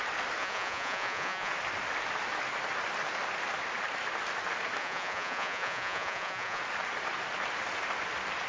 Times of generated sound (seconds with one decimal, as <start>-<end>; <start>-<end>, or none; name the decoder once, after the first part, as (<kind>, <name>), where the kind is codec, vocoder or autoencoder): 0.4-1.5 (vocoder, Vocos); 4.8-6.6